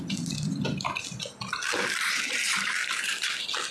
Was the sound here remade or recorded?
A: recorded